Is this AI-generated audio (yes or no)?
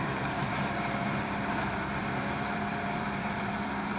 yes